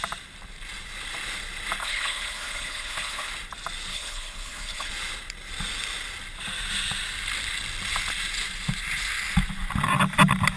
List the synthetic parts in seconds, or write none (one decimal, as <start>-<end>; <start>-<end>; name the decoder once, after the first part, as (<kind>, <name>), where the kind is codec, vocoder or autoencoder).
1.8-3.3 (codec, HILCodec); 3.9-4.9